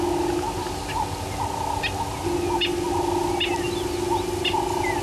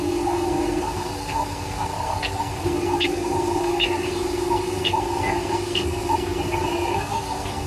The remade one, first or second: second